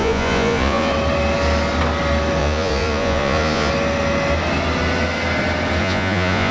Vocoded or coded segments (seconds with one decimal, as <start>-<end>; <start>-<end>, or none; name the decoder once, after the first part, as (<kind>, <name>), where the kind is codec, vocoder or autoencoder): 0.0-0.9 (vocoder, Vocos); 2.4-3.7; 5.8-6.5